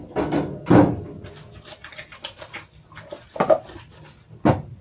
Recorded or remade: recorded